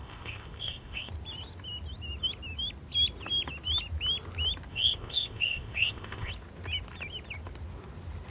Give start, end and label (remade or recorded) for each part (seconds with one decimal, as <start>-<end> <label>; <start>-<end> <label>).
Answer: 0.0-1.1 remade; 1.1-4.7 recorded; 4.7-6.3 remade; 6.3-8.3 recorded